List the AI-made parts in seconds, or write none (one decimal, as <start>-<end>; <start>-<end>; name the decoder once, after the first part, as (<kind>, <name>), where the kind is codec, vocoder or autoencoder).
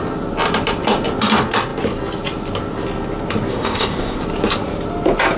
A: 3.5-4.2 (codec, ZipCodec)